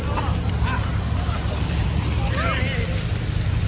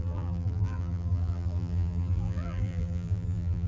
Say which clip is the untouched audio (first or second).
first